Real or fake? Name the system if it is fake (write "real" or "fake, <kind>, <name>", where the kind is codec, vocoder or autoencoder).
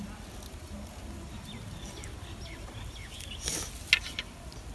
real